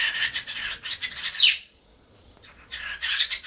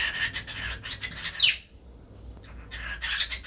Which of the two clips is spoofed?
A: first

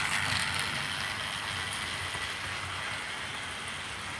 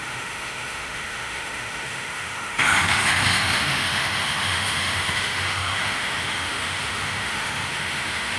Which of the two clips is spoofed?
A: second